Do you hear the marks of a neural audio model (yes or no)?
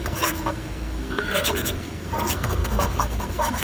yes